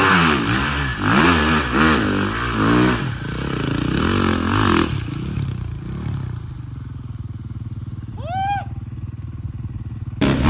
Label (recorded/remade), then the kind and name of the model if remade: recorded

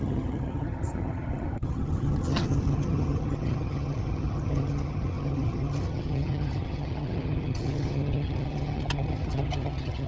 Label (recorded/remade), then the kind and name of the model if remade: remade, vocoder, HiFi-GAN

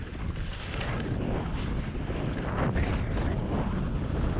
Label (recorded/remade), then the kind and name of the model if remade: recorded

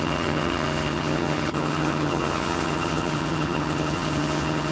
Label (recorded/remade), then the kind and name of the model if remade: remade, vocoder, HiFi-GAN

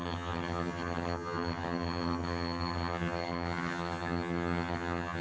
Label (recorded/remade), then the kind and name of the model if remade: remade, vocoder, HiFi-GAN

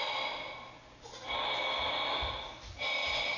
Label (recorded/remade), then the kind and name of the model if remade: recorded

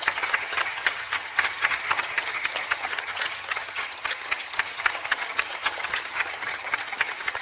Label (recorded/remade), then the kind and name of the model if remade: remade, vocoder, HiFi-GAN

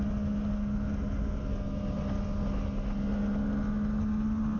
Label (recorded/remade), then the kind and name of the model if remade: recorded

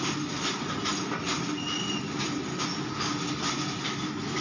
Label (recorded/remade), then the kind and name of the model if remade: recorded